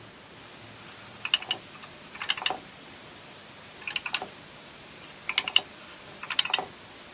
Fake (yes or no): no